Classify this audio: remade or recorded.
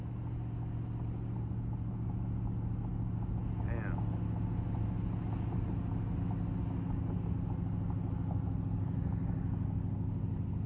recorded